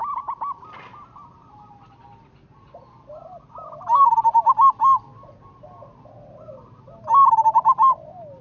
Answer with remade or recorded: recorded